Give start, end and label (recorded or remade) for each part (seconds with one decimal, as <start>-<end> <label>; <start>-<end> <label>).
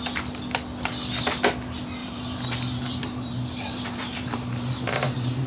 0.0-2.0 recorded; 2.0-5.5 remade